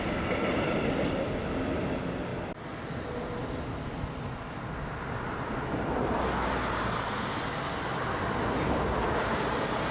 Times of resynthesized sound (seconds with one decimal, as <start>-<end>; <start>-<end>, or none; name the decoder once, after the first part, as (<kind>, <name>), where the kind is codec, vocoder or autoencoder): none